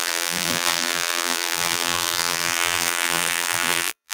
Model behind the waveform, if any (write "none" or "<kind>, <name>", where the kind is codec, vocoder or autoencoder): vocoder, BigVGAN v2